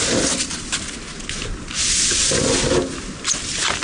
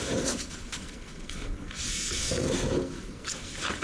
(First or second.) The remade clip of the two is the second